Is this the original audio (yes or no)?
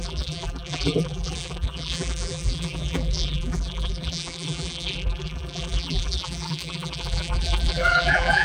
no